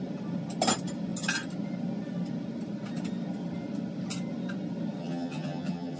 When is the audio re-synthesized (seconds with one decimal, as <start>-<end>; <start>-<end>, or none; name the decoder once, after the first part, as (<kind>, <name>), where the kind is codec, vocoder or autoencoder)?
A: 5.0-6.0 (vocoder, HiFi-GAN)